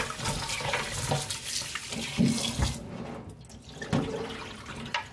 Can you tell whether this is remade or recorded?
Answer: recorded